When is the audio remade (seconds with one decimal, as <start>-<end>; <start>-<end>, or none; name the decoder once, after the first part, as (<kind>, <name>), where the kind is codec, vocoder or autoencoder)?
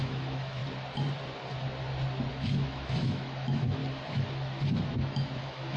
0.0-0.6 (autoencoder, DAC-VAE); 2.3-3.8; 5.0-5.8